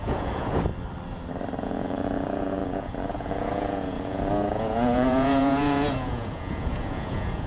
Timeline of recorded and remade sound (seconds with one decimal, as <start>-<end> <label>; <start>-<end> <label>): 0.0-0.7 remade; 0.7-1.6 recorded; 1.6-7.5 remade